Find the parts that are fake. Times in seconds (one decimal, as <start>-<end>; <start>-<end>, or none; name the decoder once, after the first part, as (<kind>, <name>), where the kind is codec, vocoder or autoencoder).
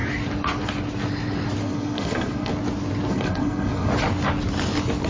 1.6-2.5 (codec, SNAC); 3.1-3.9